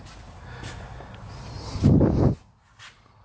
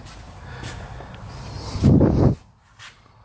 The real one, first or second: first